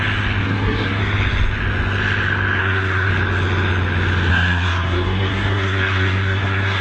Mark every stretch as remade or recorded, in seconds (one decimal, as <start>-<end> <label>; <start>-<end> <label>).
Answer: 0.0-0.4 recorded; 0.4-1.0 remade; 1.0-2.6 recorded; 2.6-3.1 remade; 3.1-4.3 recorded; 4.3-6.8 remade